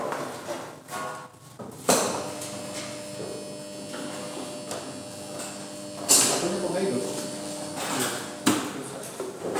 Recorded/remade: recorded